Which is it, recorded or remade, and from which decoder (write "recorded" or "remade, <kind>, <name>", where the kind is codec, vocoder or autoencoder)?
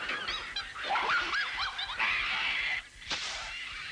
recorded